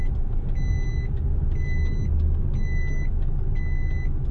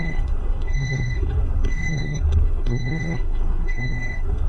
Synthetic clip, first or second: second